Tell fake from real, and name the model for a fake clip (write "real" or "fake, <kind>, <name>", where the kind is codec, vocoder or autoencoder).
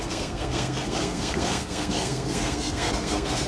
fake, codec, SNAC